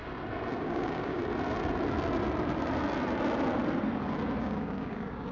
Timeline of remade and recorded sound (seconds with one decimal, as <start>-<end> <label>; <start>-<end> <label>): 0.0-0.6 recorded; 0.6-1.2 remade; 1.2-4.4 recorded; 4.4-5.3 remade